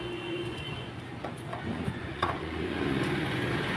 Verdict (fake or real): fake